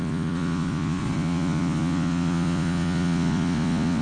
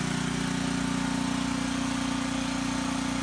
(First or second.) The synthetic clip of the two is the first